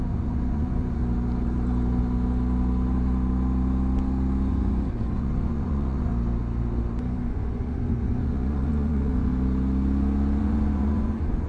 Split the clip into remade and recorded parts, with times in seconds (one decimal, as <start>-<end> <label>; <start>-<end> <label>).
0.0-1.0 remade; 1.0-4.5 recorded; 4.5-6.1 remade; 6.1-7.0 recorded; 7.0-9.3 remade; 9.3-10.4 recorded; 10.4-11.5 remade